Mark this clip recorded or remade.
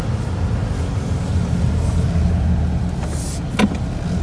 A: recorded